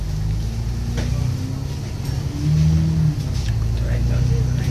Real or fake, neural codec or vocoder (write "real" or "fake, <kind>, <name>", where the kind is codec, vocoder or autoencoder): real